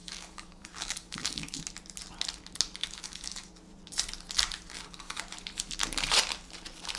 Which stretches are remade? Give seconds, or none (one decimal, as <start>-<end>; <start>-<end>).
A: 0.0-1.6; 2.8-3.5; 4.7-5.2